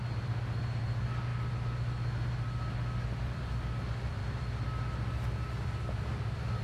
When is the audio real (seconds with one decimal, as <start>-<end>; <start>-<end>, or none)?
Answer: 1.3-3.0